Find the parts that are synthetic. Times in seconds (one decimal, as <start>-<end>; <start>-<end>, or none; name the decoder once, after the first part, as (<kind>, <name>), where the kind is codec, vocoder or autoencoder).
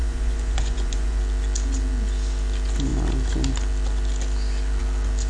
0.0-1.2 (vocoder, Vocos)